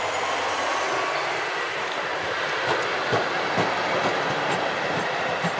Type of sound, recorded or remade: recorded